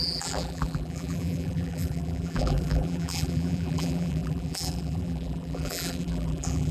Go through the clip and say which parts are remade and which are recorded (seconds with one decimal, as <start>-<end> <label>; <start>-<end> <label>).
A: 0.0-6.7 remade